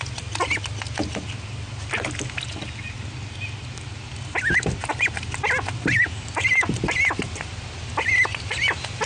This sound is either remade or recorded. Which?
recorded